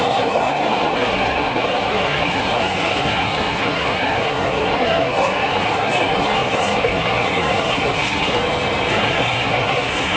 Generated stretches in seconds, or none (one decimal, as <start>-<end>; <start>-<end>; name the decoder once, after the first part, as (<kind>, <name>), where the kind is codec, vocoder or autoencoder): 0.0-8.4 (codec, SNAC); 8.9-10.2